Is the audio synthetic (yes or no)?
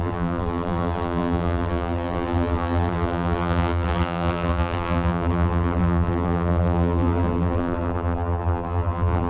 yes